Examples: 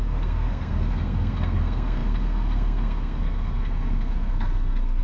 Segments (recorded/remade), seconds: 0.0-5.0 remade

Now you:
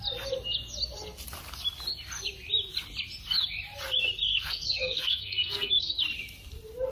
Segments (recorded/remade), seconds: 0.0-4.3 recorded; 4.3-6.0 remade; 6.0-6.9 recorded